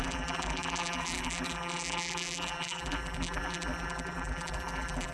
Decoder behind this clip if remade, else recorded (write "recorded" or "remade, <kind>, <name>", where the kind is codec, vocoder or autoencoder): remade, vocoder, BigVGAN v2